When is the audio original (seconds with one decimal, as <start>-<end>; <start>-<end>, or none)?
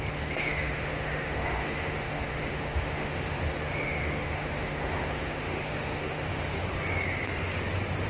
6.5-8.1